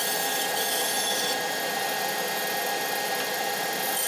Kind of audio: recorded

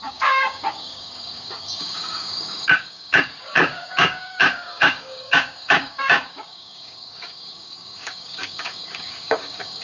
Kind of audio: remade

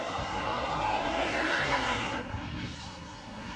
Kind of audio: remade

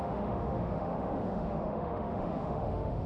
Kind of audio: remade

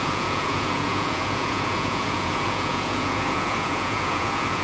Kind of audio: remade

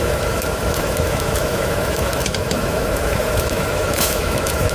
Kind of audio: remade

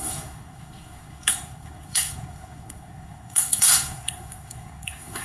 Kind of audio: remade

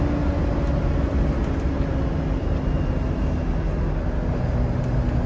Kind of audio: recorded